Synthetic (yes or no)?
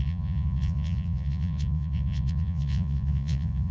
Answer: yes